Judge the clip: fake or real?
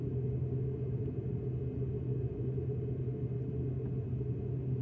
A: real